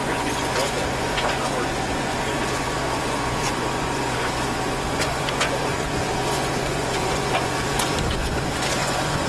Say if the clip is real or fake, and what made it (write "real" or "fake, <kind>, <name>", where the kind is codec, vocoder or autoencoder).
fake, vocoder, Vocos